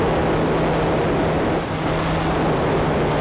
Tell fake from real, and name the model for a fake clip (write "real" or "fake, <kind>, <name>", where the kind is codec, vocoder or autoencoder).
real